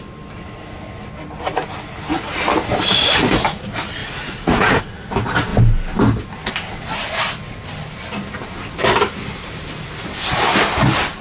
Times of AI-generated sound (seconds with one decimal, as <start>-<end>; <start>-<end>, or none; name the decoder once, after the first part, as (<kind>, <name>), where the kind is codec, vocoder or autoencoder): 4.0-4.8 (vocoder, Vocos)